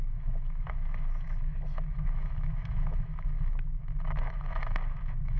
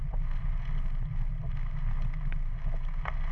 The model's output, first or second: first